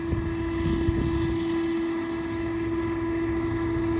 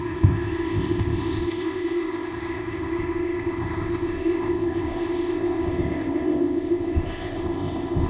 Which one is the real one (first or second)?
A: first